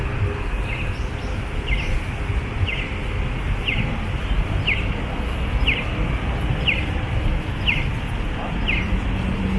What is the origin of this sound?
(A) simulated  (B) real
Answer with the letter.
B